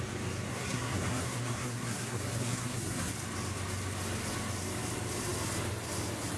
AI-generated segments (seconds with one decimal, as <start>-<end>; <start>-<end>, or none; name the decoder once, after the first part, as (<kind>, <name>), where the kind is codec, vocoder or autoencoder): 0.5-3.1 (codec, SNAC)